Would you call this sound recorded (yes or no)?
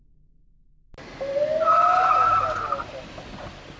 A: yes